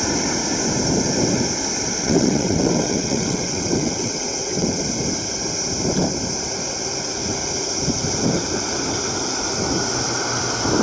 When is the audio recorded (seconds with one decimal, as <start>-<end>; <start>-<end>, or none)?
0.0-2.0; 4.8-10.8